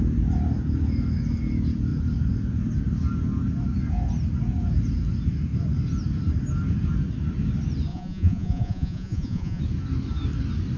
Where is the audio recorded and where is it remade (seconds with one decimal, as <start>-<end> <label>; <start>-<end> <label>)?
0.0-7.9 recorded; 7.9-9.6 remade; 9.6-10.8 recorded